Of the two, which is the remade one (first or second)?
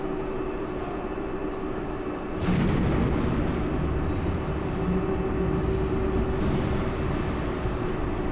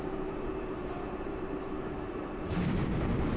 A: second